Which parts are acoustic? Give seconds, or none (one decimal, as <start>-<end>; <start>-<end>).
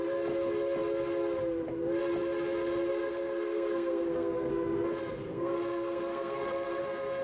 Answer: 0.0-2.9; 4.5-5.3; 6.8-7.2